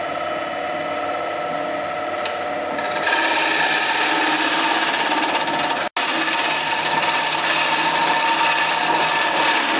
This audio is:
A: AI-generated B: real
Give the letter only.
B